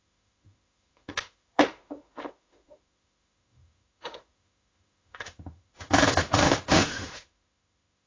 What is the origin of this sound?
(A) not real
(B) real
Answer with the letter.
A